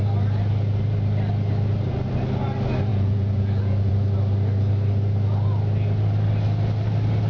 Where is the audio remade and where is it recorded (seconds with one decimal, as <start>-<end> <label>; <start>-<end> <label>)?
0.0-2.9 recorded; 2.9-3.9 remade; 3.9-7.3 recorded